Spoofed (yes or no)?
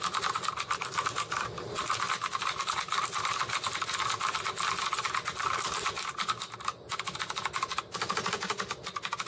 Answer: no